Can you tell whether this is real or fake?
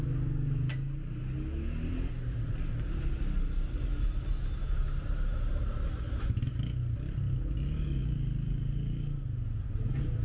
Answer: real